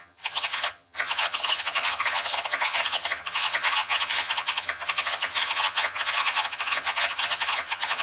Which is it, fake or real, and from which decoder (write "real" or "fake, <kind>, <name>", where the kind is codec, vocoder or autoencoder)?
fake, vocoder, HiFi-GAN